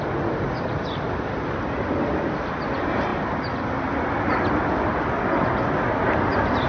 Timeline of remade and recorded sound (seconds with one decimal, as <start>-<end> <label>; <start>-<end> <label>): 0.0-6.7 recorded